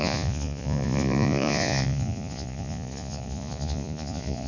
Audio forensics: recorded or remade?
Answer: remade